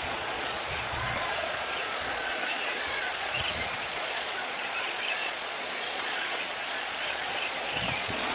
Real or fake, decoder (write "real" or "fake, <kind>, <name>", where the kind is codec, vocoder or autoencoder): fake, vocoder, Vocos